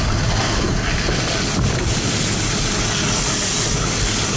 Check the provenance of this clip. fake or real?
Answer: real